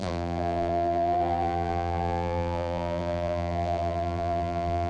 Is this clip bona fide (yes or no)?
no